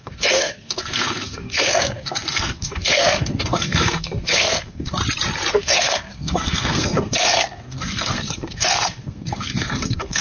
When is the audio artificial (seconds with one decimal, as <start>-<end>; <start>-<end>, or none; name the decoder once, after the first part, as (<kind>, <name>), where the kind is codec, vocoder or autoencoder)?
0.0-5.0 (codec, SNAC); 5.6-10.2